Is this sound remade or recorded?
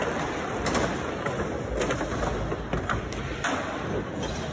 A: recorded